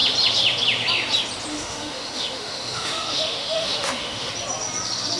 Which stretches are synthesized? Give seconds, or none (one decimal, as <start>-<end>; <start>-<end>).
1.5-4.3